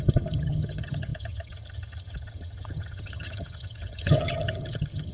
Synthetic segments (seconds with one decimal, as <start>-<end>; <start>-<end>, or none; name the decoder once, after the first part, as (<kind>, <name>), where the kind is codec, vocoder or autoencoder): 0.0-5.1 (vocoder, HiFi-GAN)